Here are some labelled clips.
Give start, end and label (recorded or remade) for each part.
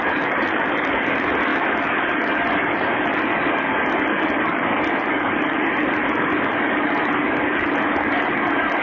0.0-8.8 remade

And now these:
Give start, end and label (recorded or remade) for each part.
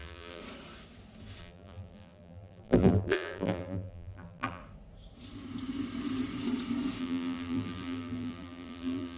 0.0-0.4 remade; 0.4-1.4 recorded; 1.4-4.6 remade; 4.6-7.0 recorded; 7.0-9.2 remade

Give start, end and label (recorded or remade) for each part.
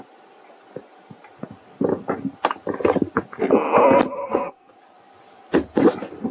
0.0-4.2 recorded; 4.2-4.7 remade; 4.7-6.3 recorded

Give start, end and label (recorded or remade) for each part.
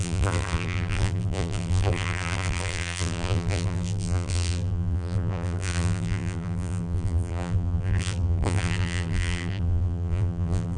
0.0-10.8 remade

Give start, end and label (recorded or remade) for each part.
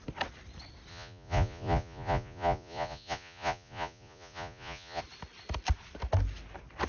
0.0-0.9 recorded; 0.9-5.0 remade; 5.0-6.9 recorded